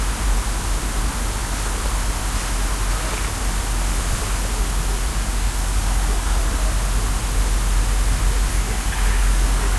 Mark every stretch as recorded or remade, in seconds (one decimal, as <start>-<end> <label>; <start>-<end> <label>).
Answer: 0.0-5.1 recorded; 5.1-6.5 remade; 6.5-8.5 recorded; 8.5-9.8 remade